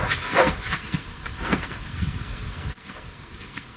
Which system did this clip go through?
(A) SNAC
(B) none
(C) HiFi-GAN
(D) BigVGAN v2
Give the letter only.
A